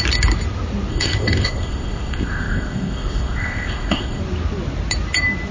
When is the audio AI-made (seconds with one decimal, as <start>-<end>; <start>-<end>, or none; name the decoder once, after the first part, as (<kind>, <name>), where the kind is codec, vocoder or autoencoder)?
0.9-4.2 (codec, ZipCodec)